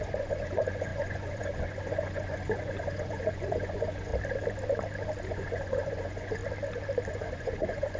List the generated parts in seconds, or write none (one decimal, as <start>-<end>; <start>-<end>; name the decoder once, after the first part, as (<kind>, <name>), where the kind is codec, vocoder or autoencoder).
0.0-4.1 (vocoder, Vocos); 5.2-6.4; 7.1-8.0